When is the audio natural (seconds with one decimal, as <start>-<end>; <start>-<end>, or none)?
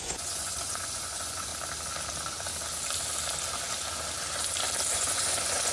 1.5-4.9